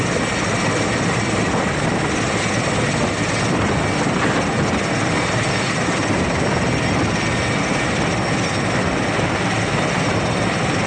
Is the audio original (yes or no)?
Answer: yes